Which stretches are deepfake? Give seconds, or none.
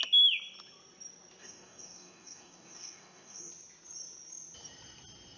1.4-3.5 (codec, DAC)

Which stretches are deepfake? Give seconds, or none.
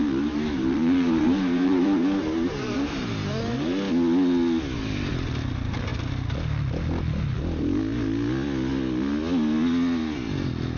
0.0-3.1 (vocoder, BigVGAN v2)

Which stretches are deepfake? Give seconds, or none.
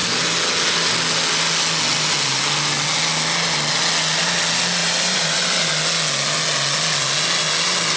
4.8-5.4 (vocoder, BigVGAN v2)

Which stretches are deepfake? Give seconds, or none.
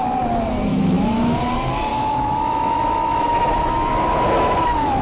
0.7-1.4 (autoencoder, DAC-VAE); 1.9-5.0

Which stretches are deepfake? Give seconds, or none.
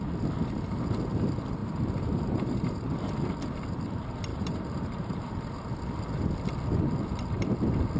1.6-2.9 (vocoder, BigVGAN v2); 4.3-5.7